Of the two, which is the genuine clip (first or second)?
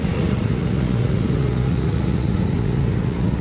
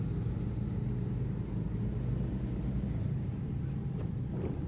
second